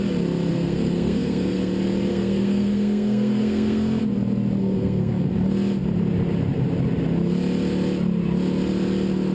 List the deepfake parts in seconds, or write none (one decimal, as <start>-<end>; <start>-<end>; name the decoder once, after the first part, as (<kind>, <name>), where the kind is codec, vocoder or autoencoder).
0.5-1.7 (codec, SNAC); 2.1-4.0; 4.6-5.3